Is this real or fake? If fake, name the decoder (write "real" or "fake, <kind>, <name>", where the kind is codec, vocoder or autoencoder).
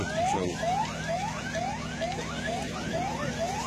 real